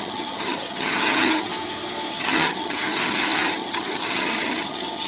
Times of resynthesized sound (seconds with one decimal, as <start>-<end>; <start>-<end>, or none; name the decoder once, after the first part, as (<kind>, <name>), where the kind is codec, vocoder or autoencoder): 0.0-1.5 (vocoder, HiFi-GAN); 2.1-5.1